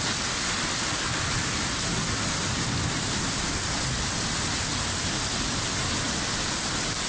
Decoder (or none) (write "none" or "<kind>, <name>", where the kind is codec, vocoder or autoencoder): none